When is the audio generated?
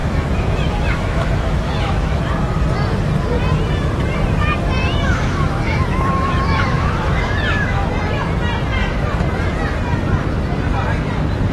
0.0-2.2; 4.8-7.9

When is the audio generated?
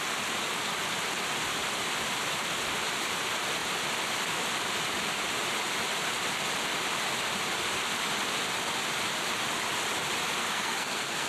10.4-11.3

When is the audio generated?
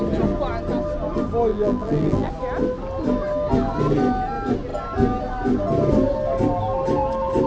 1.5-2.3